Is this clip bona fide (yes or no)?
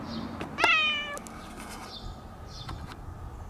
yes